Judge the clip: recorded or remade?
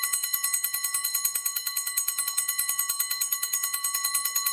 remade